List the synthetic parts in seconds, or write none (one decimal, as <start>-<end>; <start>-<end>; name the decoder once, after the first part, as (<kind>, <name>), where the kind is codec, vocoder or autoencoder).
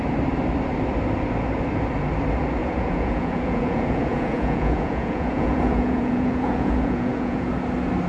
2.6-7.5 (vocoder, Vocos)